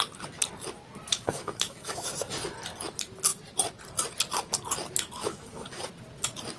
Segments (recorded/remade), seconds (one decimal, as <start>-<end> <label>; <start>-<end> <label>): 0.0-1.1 recorded; 1.1-2.1 remade; 2.1-5.2 recorded; 5.2-5.8 remade; 5.8-6.6 recorded